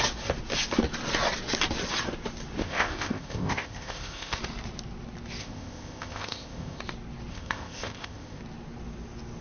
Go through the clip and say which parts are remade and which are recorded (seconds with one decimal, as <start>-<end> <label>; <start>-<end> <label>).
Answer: 0.0-2.6 recorded; 2.6-4.4 remade; 4.4-5.4 recorded; 5.4-6.8 remade; 6.8-7.3 recorded; 7.3-8.4 remade; 8.4-9.4 recorded